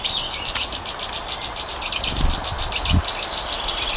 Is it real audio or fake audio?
fake